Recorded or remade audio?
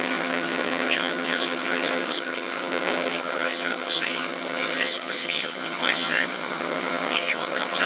remade